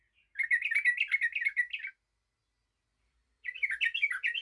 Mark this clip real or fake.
real